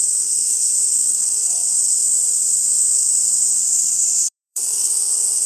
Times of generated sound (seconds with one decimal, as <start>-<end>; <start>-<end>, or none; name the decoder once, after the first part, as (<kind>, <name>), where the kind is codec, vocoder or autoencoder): 0.0-5.5 (codec, SNAC)